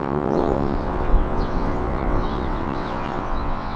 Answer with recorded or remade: remade